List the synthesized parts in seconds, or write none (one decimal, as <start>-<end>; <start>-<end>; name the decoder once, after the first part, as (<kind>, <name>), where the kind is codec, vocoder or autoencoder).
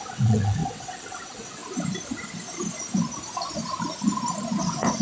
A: 0.0-1.6 (vocoder, WaveNeXt); 4.6-5.0